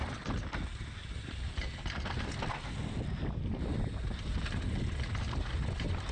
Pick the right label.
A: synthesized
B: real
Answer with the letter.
B